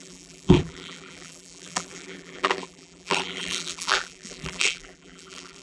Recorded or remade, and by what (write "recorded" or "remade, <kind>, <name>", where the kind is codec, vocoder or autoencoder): remade, vocoder, BigVGAN v2